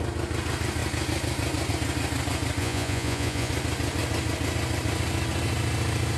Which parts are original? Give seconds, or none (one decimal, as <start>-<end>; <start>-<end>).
0.0-2.6; 3.5-6.2